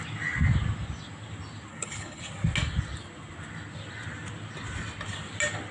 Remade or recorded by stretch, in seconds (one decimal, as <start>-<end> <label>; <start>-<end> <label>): 0.0-1.7 recorded; 1.7-2.2 remade; 2.2-5.7 recorded